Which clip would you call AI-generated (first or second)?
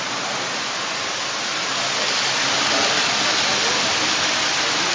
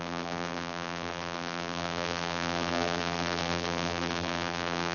second